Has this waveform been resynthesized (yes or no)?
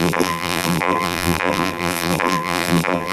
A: yes